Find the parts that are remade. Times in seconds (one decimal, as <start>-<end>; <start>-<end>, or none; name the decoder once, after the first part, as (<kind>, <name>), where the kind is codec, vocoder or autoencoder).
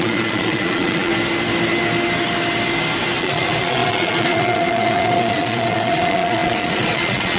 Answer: 0.0-1.1 (vocoder, Vocos); 3.2-7.4